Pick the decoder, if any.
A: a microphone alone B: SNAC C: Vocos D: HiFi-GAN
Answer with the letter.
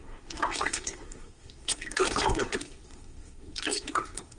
B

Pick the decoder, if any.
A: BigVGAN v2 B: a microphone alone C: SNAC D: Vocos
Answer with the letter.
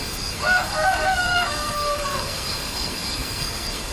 C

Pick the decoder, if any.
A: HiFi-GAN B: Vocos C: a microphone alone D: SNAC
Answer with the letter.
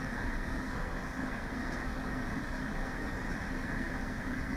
D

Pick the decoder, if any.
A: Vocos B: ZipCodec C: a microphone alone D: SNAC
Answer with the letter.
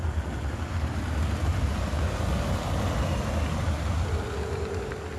C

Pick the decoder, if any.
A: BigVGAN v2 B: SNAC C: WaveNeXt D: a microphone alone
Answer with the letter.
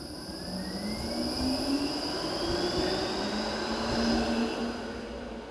D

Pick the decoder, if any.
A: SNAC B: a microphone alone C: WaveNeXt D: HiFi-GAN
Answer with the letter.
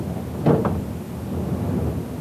B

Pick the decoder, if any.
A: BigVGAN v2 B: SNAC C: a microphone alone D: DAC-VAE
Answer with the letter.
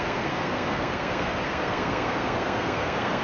B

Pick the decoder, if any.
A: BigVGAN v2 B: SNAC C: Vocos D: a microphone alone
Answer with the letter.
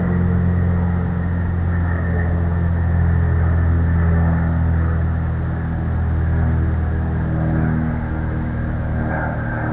D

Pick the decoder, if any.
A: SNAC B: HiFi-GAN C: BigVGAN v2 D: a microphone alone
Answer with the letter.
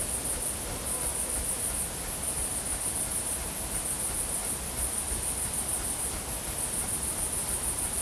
D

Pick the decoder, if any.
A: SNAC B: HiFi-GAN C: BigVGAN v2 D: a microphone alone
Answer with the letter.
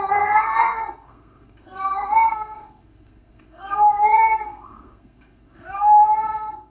A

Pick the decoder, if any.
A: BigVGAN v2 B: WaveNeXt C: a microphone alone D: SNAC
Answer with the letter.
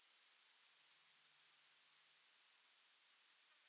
C